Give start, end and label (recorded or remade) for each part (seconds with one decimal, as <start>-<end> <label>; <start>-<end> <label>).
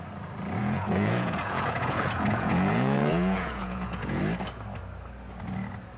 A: 0.0-0.6 recorded; 0.6-4.2 remade; 4.2-6.0 recorded